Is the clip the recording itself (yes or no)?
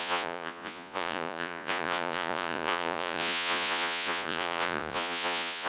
no